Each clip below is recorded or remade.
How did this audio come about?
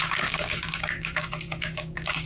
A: remade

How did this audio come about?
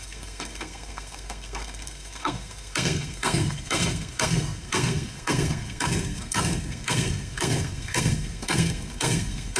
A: remade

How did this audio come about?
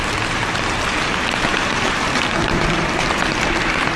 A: remade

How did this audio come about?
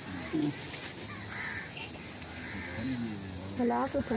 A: recorded